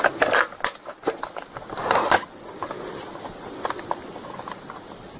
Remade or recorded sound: recorded